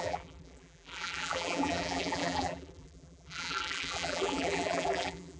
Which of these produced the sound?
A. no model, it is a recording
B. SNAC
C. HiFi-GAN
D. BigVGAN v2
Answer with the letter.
D